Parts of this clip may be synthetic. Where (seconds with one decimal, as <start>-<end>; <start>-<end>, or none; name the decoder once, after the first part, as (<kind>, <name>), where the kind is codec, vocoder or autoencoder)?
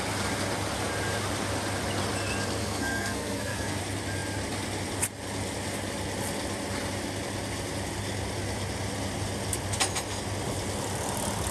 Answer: 2.6-3.8 (codec, SNAC)